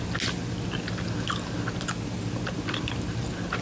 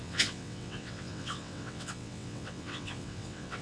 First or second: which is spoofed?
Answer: second